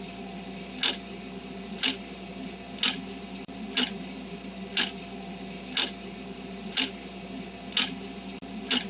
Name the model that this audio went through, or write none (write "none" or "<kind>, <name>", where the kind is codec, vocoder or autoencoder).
none